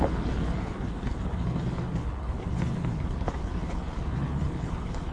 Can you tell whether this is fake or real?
fake